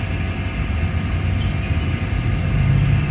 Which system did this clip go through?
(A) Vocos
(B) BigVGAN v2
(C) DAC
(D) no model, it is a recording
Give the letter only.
D